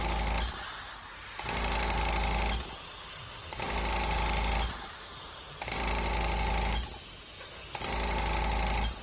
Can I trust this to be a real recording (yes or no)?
yes